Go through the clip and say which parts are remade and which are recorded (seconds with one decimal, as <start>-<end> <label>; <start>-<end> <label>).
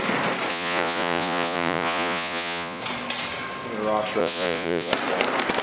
0.0-0.5 recorded; 0.5-2.8 remade; 2.8-4.2 recorded; 4.2-4.9 remade; 4.9-5.6 recorded